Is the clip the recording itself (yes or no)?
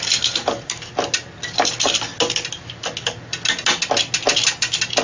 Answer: yes